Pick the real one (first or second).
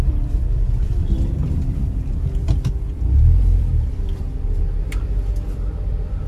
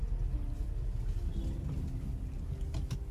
second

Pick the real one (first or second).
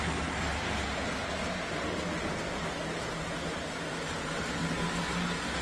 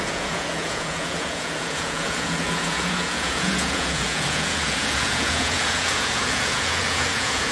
first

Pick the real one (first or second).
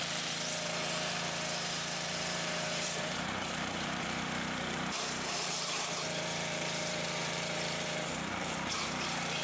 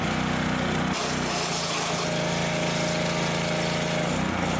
second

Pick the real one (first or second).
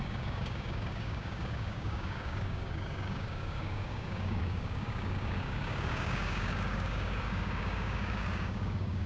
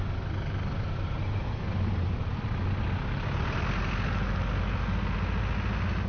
second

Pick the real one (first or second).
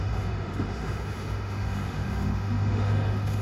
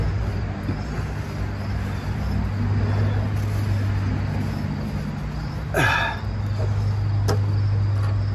second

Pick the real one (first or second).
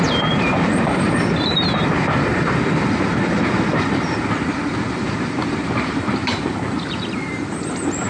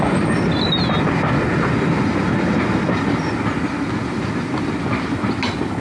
second